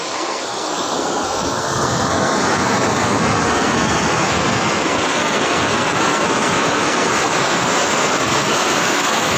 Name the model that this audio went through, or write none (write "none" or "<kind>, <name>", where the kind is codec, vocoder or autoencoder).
codec, SNAC